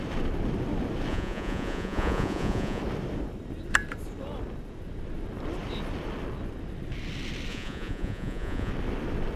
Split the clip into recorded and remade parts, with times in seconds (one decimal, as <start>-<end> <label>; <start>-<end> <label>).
0.0-1.1 recorded; 1.1-2.8 remade; 2.8-7.5 recorded; 7.5-8.7 remade; 8.7-9.4 recorded